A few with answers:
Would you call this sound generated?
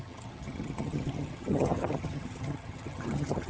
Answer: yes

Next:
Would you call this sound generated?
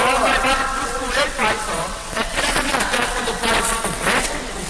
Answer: yes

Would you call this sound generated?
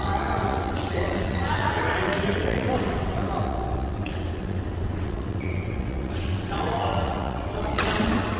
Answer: yes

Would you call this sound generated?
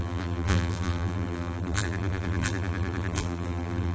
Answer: yes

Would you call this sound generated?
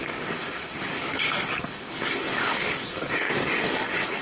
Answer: yes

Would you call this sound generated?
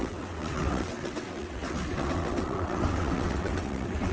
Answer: yes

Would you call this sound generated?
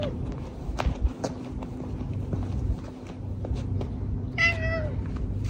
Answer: no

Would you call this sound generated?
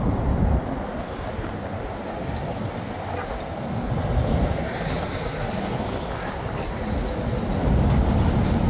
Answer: no